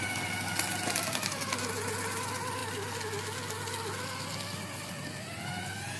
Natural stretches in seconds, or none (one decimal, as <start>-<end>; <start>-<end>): 0.0-6.0